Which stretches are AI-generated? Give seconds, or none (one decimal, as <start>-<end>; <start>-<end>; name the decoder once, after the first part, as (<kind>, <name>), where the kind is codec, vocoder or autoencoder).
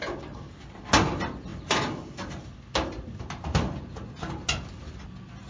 none